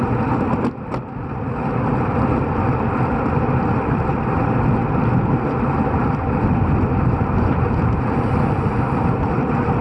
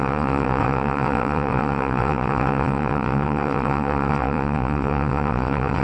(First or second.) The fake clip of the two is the second